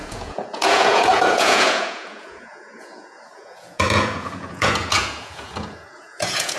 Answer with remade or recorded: remade